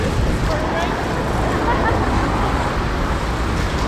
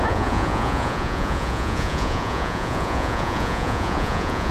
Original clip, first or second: first